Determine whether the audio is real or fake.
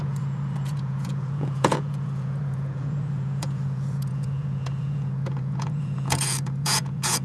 fake